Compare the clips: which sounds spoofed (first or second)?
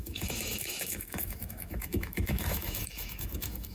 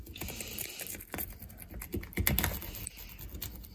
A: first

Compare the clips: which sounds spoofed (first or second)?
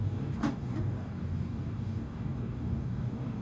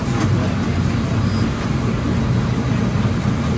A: first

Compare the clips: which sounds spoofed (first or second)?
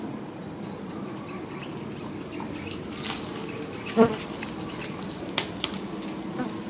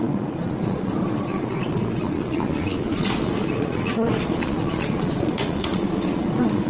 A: second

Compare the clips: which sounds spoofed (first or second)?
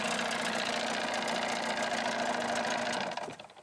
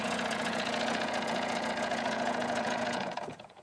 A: second